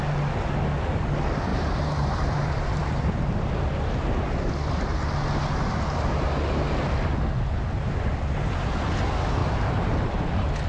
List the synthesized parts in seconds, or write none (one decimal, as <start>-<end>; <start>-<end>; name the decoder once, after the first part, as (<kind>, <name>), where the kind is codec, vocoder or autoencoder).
1.5-3.3 (vocoder, BigVGAN v2); 9.4-10.2